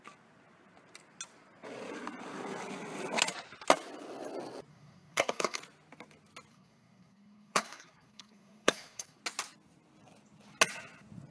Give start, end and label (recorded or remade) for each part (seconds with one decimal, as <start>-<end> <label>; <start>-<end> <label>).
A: 0.0-4.7 recorded; 4.7-5.6 remade; 5.6-6.5 recorded; 6.5-9.2 remade; 9.2-11.3 recorded